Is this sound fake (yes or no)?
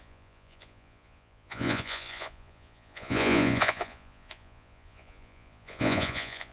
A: yes